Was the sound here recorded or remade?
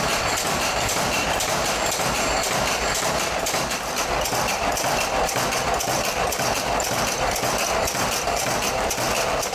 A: remade